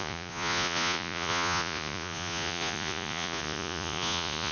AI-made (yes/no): yes